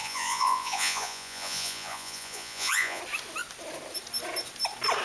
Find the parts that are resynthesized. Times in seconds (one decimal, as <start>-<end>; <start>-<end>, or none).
0.0-3.0